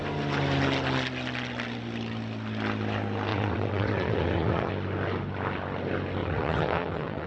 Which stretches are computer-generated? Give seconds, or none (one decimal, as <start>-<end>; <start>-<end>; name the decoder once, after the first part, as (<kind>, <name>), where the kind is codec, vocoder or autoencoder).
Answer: 3.3-4.7 (vocoder, WaveNeXt); 6.2-7.3